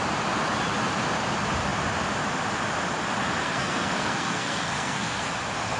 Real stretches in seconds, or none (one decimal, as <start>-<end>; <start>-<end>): 0.0-3.4; 5.3-5.8